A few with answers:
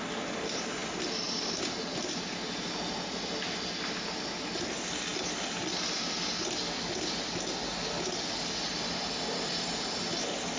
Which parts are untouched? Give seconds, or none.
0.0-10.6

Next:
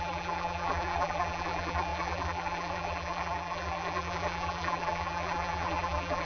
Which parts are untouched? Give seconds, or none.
none